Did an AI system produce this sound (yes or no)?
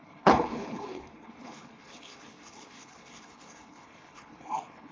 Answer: yes